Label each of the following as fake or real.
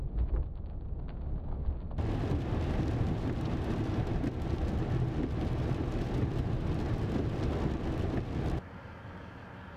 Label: real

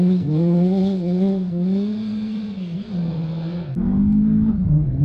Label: fake